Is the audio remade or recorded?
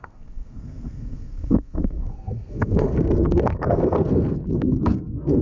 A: remade